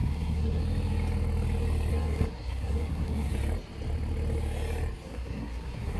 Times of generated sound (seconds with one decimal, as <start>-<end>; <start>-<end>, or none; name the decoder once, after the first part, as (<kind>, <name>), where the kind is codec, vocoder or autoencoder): 0.0-0.6 (codec, SNAC); 1.9-3.3; 5.1-6.0